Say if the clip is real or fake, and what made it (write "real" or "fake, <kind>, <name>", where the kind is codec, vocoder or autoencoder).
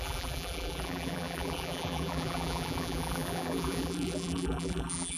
fake, vocoder, BigVGAN v2